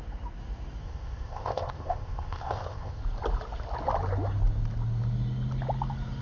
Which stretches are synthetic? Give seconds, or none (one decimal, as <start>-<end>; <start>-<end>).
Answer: 0.8-3.0